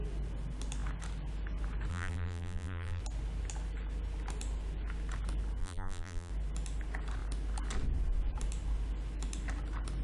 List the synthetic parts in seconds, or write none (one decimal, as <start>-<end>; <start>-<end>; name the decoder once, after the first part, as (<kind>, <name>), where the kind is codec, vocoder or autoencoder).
1.9-3.0 (vocoder, BigVGAN v2); 5.6-6.3

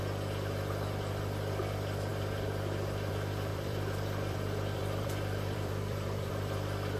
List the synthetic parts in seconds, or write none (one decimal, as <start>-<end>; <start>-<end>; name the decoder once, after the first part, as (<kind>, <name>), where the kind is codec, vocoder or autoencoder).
3.5-6.3 (vocoder, BigVGAN v2)